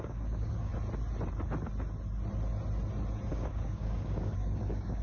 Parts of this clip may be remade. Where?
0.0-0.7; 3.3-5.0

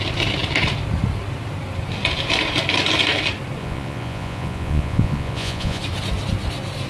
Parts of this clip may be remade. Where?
3.6-5.8

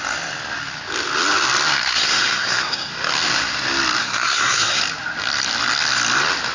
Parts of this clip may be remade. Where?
1.8-2.9; 4.0-4.8

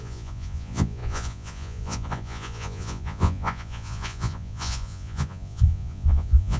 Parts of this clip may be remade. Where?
0.0-6.6